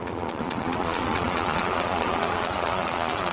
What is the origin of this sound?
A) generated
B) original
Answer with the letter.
A